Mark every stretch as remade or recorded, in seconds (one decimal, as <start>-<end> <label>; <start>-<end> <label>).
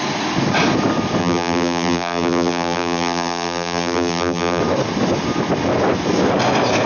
0.0-1.2 recorded; 1.2-4.6 remade; 4.6-6.9 recorded